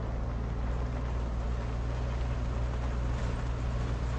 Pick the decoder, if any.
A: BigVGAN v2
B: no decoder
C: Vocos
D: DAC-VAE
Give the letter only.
B